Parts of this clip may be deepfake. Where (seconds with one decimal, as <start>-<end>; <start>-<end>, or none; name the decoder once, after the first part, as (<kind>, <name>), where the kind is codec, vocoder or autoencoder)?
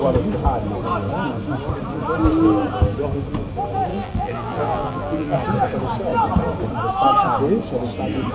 3.9-5.4 (vocoder, BigVGAN v2)